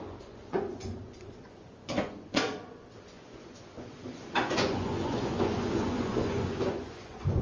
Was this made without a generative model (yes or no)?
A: no